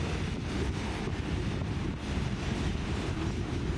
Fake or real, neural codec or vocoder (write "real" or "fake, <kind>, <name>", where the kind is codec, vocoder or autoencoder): real